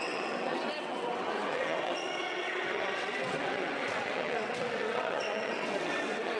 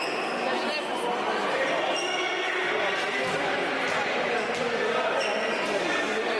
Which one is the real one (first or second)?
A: second